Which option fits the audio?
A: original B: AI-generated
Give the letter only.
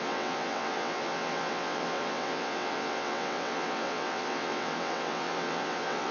B